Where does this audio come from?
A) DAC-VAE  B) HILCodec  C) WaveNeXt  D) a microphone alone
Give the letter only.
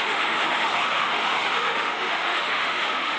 A